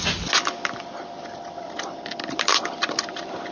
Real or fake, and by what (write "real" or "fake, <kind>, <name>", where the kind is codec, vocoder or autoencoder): real